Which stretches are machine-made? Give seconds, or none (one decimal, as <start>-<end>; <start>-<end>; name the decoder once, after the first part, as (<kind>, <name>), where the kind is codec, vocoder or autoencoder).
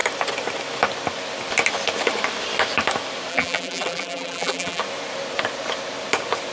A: 3.3-4.8 (vocoder, BigVGAN v2)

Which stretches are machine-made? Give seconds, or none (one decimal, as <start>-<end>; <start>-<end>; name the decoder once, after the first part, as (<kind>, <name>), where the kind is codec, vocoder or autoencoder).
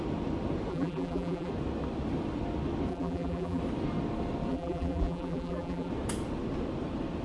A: 0.7-1.5 (vocoder, BigVGAN v2); 2.9-3.6; 4.5-5.9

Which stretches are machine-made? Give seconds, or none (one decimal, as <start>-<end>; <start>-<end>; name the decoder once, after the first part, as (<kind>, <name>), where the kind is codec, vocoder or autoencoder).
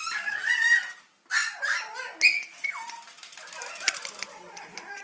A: 0.0-1.4 (vocoder, BigVGAN v2); 4.3-5.0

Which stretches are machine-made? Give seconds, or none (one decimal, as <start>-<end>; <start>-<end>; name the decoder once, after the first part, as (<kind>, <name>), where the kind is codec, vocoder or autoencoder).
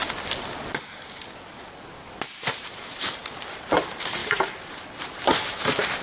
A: 2.6-6.0 (vocoder, BigVGAN v2)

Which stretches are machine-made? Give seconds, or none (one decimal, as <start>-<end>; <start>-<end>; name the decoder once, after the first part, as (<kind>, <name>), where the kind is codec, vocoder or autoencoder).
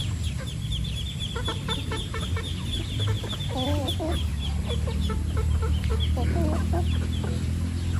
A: 0.0-4.3 (vocoder, BigVGAN v2); 5.1-5.9